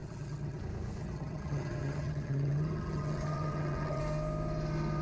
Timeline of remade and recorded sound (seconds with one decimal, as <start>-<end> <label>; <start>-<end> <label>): 0.0-0.6 remade; 0.6-1.0 recorded; 1.0-4.0 remade; 4.0-5.0 recorded